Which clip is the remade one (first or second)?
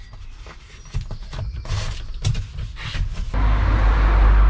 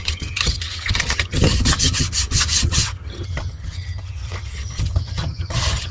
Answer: second